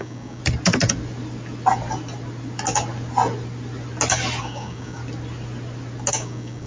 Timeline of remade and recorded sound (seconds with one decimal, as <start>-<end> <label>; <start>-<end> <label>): 0.0-0.4 remade; 0.4-4.4 recorded; 4.4-5.0 remade; 5.0-6.1 recorded; 6.1-6.7 remade